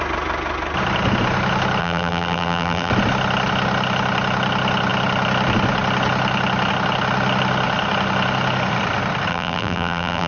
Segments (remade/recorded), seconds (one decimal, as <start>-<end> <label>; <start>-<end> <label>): 0.0-1.8 recorded; 1.8-2.9 remade; 2.9-9.3 recorded; 9.3-10.3 remade